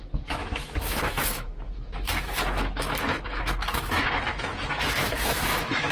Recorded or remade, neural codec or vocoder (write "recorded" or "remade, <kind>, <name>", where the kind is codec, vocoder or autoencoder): remade, autoencoder, DAC-VAE